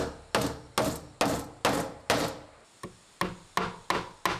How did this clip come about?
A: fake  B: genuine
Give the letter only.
B